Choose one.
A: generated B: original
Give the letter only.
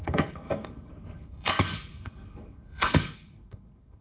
A